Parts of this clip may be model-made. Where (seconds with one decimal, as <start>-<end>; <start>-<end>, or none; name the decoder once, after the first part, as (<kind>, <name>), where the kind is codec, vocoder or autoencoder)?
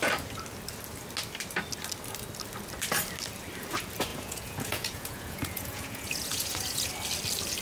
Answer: 4.1-6.9 (vocoder, Vocos)